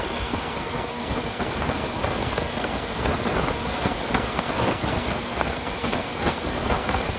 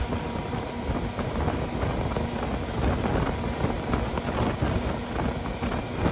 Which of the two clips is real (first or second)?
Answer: second